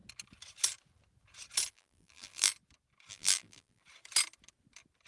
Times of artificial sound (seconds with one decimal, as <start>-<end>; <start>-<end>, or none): 1.7-2.5; 3.1-3.8